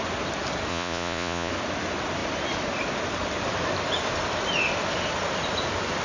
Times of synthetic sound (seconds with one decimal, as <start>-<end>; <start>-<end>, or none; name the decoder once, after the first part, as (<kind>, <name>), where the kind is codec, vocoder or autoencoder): 0.7-1.5 (vocoder, Vocos)